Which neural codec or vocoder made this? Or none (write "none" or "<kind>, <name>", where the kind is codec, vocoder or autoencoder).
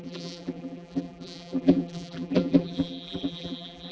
vocoder, BigVGAN v2